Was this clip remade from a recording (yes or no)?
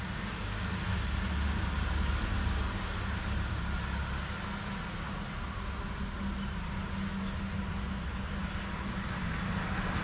no